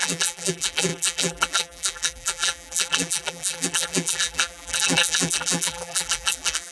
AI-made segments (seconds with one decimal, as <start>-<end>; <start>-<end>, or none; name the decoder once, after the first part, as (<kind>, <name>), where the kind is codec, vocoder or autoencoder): 0.0-6.7 (vocoder, BigVGAN v2)